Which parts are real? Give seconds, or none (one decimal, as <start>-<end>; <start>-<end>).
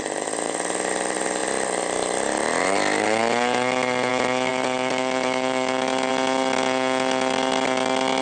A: 0.0-4.5; 6.1-8.2